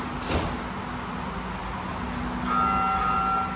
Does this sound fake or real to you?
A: real